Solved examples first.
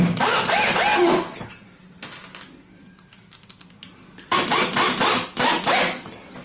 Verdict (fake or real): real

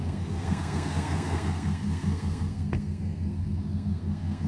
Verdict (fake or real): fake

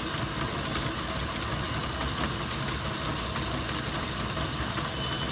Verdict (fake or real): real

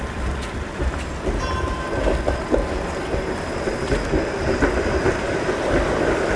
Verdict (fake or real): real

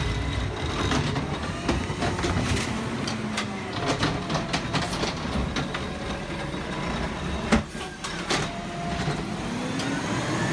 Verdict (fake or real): real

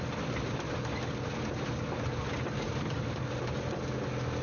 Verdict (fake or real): real